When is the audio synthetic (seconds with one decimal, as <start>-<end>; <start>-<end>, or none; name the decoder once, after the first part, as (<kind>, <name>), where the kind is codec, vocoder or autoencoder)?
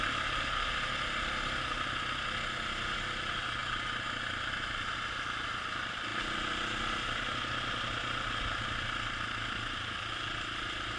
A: none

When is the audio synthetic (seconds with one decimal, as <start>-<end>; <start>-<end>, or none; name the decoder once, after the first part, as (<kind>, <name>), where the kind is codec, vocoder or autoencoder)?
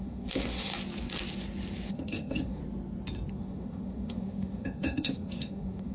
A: 0.0-0.7 (autoencoder, DAC-VAE); 1.9-2.6; 3.3-5.9